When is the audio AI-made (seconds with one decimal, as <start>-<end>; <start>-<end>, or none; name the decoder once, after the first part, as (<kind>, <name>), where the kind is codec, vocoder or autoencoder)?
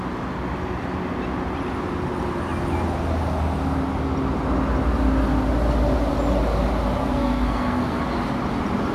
7.0-8.0 (codec, SNAC)